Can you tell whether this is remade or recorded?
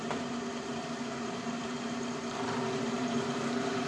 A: remade